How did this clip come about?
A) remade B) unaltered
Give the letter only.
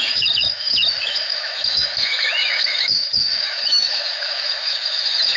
A